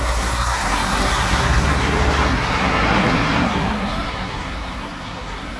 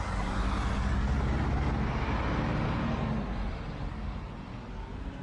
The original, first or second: second